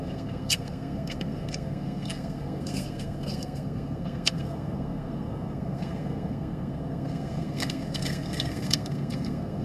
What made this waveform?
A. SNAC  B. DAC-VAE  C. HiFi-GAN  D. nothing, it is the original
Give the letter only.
A